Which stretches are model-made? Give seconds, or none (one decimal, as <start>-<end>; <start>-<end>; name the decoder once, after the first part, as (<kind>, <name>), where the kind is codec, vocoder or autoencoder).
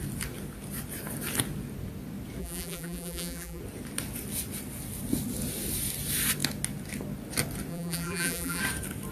2.4-3.6 (vocoder, BigVGAN v2); 7.7-8.6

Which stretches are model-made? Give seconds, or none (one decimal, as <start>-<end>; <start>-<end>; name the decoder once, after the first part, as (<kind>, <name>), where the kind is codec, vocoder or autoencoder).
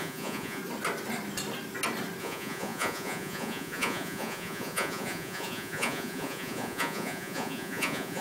0.0-0.6 (vocoder, Vocos); 2.2-8.2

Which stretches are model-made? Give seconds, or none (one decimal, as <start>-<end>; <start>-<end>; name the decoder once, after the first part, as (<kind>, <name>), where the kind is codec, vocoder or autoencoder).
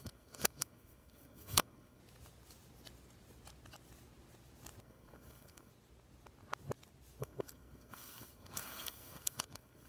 0.0-2.0 (codec, SNAC); 4.8-5.7; 7.2-9.9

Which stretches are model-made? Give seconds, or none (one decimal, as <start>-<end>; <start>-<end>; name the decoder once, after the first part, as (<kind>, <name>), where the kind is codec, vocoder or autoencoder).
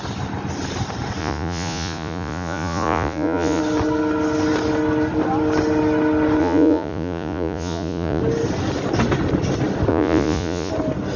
1.2-3.6 (vocoder, Vocos); 6.4-8.2; 9.9-10.7